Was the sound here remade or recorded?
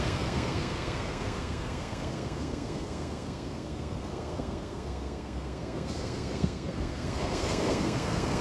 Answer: remade